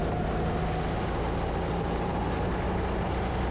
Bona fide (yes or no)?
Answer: yes